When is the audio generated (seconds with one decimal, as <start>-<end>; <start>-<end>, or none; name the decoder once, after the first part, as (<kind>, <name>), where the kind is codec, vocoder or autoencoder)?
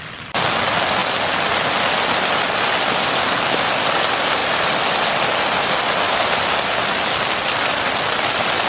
none